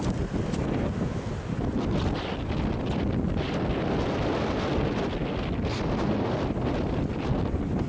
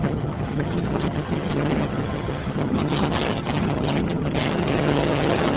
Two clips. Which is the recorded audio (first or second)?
first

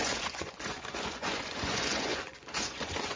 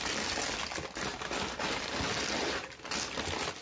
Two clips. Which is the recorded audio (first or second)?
second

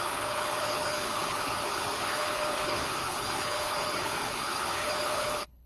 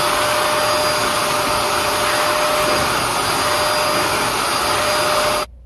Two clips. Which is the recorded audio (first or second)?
second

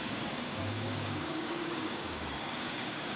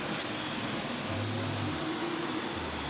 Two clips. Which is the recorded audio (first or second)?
second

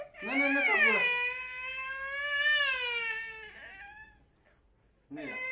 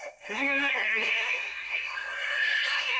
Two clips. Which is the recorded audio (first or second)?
first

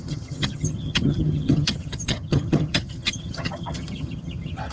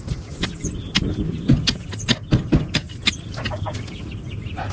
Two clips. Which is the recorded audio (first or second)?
second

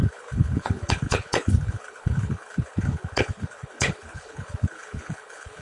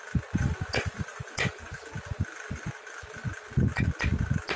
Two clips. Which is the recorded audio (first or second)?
second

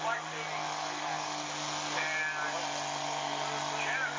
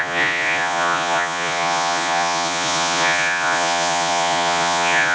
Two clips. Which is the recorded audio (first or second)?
first